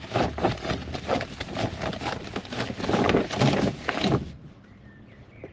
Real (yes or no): yes